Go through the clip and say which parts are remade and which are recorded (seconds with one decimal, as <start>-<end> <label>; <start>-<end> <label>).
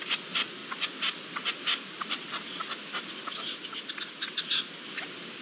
0.0-5.4 recorded